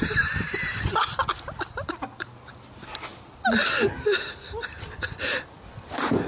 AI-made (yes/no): no